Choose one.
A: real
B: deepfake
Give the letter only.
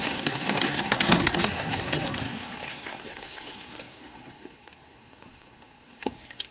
B